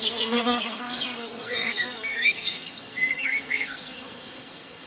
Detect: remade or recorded remade